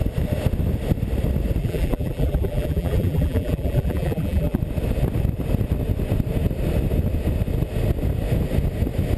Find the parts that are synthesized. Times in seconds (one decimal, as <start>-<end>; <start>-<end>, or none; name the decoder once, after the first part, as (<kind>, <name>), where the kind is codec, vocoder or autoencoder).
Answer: 1.6-4.6 (vocoder, BigVGAN v2)